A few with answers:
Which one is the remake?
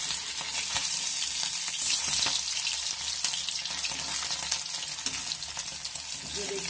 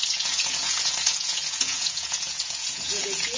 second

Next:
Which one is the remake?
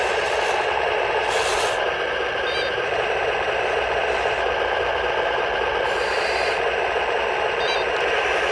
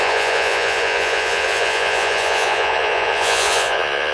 second